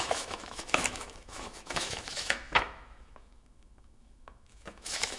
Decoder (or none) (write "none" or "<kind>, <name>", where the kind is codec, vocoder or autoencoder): autoencoder, DAC-VAE